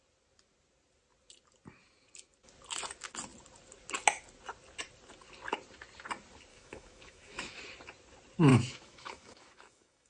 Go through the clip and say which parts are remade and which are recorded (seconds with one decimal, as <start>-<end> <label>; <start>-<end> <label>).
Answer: 0.0-6.5 recorded; 6.5-7.6 remade; 7.6-8.5 recorded; 8.5-10.1 remade